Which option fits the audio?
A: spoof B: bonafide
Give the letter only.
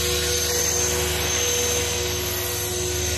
B